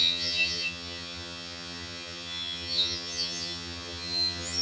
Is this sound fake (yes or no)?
yes